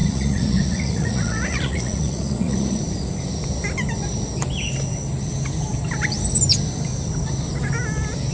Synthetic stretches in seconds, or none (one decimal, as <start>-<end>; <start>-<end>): 0.0-2.8